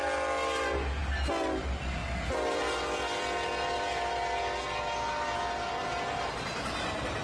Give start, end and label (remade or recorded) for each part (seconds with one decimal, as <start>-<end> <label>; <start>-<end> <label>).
0.0-7.2 recorded

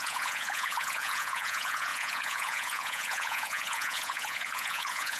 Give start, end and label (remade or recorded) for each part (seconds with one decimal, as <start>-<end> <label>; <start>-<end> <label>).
0.0-5.2 remade

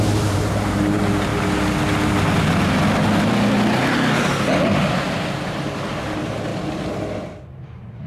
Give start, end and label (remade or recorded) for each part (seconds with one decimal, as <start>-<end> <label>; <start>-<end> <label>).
0.0-1.3 remade; 1.3-4.8 recorded; 4.8-6.5 remade; 6.5-8.1 recorded

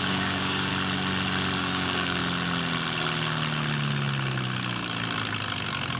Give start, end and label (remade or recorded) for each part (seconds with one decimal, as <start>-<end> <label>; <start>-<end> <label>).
0.0-0.7 remade; 0.7-1.6 recorded; 1.6-2.2 remade; 2.2-6.0 recorded

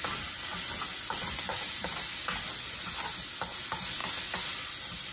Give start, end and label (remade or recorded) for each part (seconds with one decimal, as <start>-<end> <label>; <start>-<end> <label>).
0.0-5.1 recorded